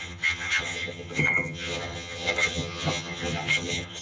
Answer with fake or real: fake